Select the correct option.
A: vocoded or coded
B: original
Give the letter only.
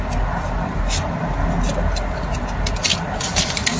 B